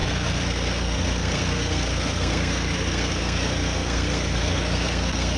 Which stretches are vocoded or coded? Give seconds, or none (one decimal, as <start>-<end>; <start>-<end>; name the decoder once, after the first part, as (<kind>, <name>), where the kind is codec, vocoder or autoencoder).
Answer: 0.0-5.4 (codec, SNAC)